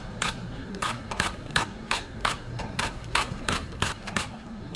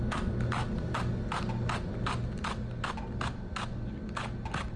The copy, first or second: first